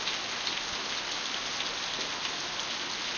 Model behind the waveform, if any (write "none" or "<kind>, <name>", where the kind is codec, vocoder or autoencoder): none